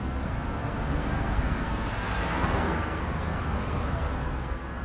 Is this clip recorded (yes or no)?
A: no